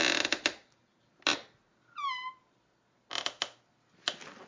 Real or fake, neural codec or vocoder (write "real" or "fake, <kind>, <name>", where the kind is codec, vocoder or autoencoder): real